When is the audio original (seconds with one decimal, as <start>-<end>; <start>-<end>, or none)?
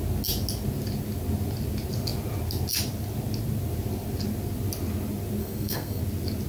0.0-5.4; 6.0-6.5